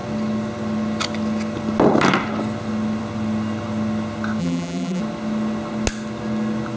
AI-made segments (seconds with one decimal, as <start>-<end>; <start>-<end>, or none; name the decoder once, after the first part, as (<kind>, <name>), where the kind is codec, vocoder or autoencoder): 4.4-5.0 (vocoder, BigVGAN v2)